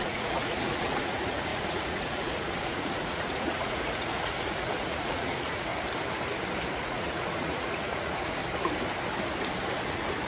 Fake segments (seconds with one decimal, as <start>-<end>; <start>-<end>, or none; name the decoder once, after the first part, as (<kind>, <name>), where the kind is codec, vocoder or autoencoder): 0.0-5.7 (vocoder, Vocos); 6.7-8.4; 9.9-10.3